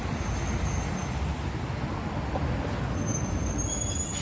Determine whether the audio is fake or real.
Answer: real